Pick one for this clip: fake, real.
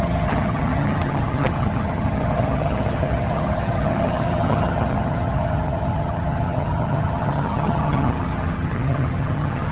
fake